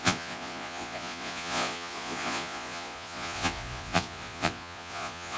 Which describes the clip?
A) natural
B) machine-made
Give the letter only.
B